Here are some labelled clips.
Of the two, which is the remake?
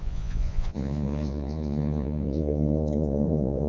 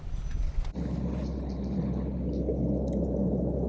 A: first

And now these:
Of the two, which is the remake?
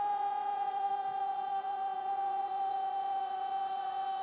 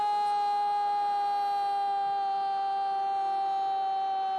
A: first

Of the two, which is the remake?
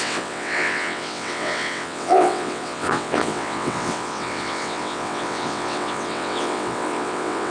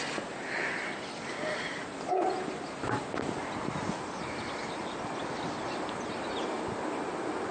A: first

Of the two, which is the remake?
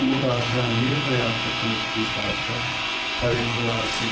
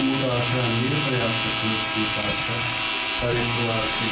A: first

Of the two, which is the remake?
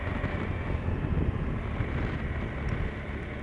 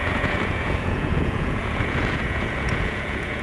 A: second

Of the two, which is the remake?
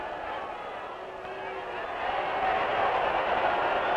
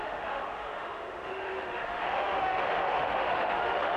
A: second